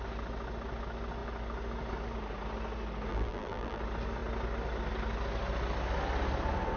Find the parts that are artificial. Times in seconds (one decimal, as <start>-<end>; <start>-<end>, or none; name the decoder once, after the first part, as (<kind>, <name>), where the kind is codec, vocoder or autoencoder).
3.1-3.8 (vocoder, BigVGAN v2)